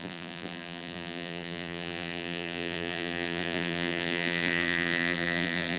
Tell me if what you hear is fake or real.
fake